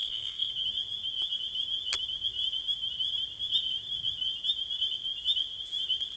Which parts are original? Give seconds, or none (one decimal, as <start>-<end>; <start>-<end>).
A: 0.5-6.2